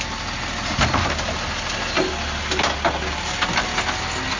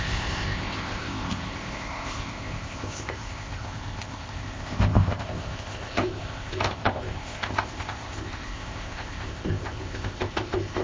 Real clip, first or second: first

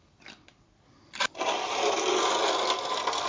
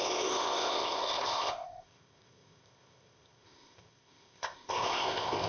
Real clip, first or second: first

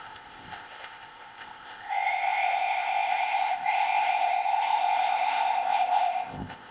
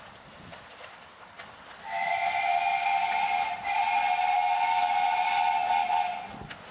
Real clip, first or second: second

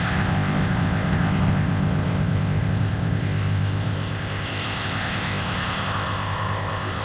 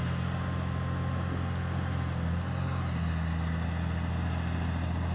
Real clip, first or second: second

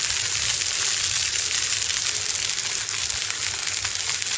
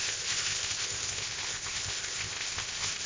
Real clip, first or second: first